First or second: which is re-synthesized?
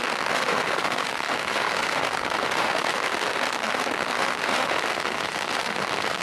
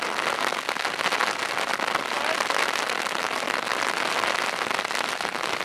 first